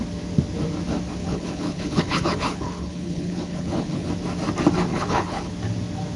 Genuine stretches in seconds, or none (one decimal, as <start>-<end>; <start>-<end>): 0.0-1.2; 4.1-4.9; 5.5-6.2